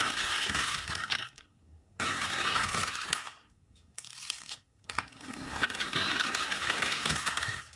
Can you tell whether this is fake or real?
fake